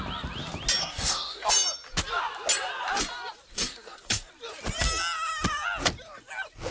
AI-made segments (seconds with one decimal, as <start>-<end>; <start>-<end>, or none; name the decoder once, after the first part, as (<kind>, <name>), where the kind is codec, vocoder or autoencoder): 0.8-1.5 (codec, SNAC); 3.5-4.3